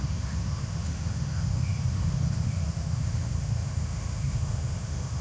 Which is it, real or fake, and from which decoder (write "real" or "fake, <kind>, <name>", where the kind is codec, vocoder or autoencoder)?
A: fake, autoencoder, DAC-VAE